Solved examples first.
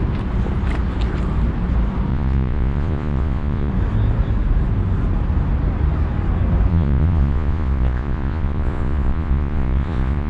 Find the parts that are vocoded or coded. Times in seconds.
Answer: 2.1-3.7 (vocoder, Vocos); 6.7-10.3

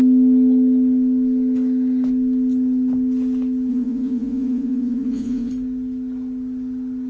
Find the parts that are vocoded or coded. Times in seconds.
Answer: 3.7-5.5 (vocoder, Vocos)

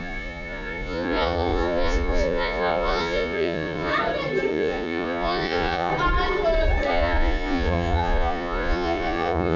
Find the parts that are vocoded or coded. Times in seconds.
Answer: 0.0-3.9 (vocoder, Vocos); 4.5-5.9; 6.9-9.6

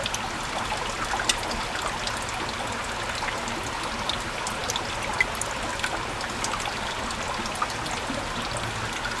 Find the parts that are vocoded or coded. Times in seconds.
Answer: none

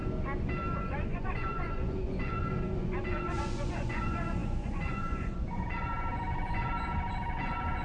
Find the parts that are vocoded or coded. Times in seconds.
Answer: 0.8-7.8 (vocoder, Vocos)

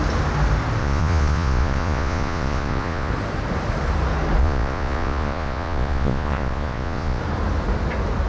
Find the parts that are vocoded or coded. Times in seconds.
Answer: 0.8-3.1 (vocoder, Vocos); 4.4-7.2